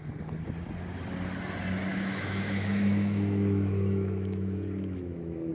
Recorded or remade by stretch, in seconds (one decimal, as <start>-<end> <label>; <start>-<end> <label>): 0.0-1.9 recorded; 1.9-5.5 remade